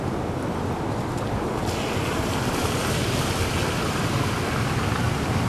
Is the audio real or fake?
real